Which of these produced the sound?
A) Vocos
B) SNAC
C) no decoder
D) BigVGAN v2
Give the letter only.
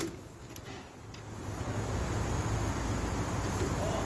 C